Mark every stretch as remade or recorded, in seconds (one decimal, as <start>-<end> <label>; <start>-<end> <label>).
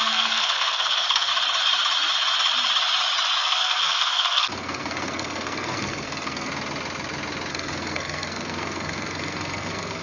0.0-1.3 remade; 1.3-3.4 recorded; 3.4-6.5 remade; 6.5-7.5 recorded; 7.5-10.0 remade